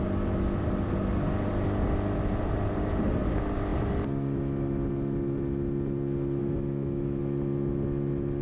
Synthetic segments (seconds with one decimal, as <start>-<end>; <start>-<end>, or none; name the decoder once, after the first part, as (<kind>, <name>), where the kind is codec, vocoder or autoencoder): 6.4-7.2 (autoencoder, DAC-VAE)